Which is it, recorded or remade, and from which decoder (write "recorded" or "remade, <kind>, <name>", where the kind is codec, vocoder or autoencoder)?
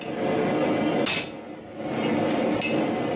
recorded